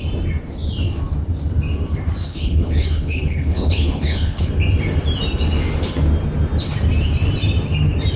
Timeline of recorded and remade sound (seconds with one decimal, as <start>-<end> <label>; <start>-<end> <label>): 0.0-2.2 recorded; 2.2-4.5 remade; 4.5-8.2 recorded